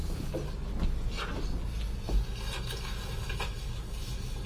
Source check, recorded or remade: recorded